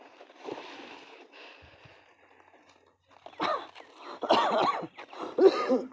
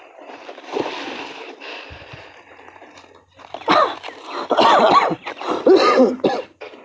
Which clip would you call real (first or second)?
first